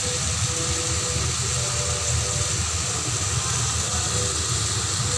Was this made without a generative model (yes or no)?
yes